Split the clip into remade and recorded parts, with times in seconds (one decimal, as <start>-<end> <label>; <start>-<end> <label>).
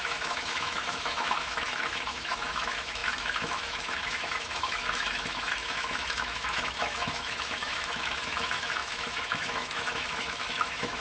0.0-11.0 remade